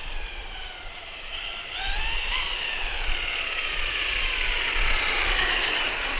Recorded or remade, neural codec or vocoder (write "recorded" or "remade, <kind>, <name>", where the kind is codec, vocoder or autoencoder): recorded